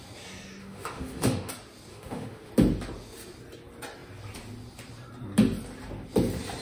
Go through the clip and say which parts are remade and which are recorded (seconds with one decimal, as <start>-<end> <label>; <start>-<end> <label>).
0.0-0.6 recorded; 0.6-1.5 remade; 1.5-1.9 recorded; 1.9-2.5 remade; 2.5-6.6 recorded